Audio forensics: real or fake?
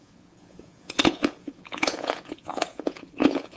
fake